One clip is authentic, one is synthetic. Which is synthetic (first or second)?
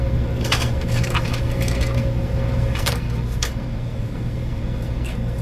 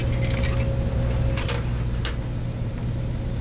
first